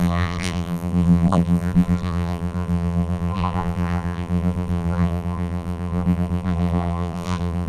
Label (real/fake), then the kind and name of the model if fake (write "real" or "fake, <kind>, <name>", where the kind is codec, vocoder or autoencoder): fake, vocoder, BigVGAN v2